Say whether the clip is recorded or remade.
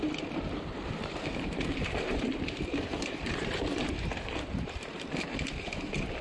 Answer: remade